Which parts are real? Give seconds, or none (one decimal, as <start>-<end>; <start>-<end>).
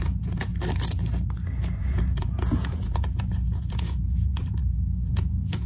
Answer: 0.5-1.8; 4.6-5.1